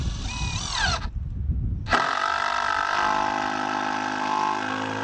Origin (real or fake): real